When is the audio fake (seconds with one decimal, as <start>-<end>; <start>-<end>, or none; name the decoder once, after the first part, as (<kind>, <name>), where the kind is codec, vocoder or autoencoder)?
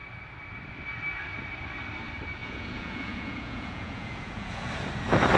2.4-4.7 (vocoder, Vocos)